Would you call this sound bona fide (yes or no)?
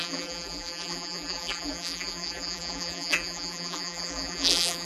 no